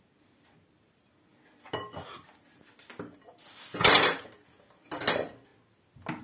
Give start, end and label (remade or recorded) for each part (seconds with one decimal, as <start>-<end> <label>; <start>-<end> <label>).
0.0-6.2 recorded